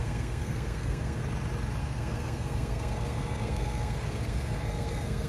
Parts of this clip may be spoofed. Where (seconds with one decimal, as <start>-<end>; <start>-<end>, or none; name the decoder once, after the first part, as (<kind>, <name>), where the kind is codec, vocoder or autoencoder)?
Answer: 0.0-1.2 (codec, SNAC); 1.8-5.3